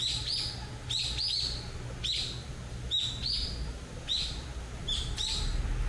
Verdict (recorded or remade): recorded